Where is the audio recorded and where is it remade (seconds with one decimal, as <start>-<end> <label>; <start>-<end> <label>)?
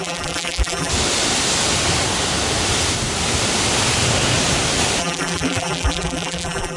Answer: 0.0-0.9 remade; 0.9-5.0 recorded; 5.0-6.8 remade